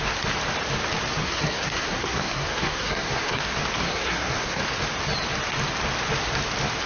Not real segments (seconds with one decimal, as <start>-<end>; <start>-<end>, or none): 1.2-3.4; 3.8-4.6